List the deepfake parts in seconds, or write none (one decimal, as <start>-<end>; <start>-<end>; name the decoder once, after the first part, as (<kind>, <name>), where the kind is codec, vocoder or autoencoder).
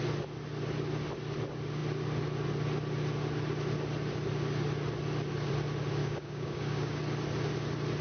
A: 6.0-7.0 (codec, DAC)